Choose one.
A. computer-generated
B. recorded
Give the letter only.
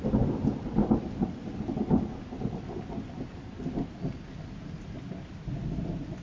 B